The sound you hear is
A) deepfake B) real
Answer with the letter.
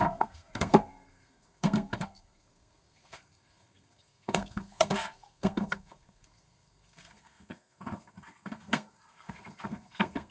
A